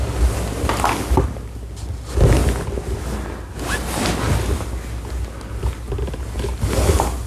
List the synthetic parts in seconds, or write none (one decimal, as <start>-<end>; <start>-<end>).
none